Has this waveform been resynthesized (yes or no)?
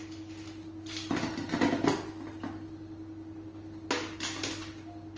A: no